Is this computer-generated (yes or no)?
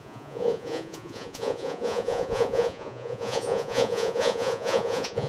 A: yes